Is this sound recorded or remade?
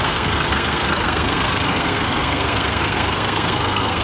remade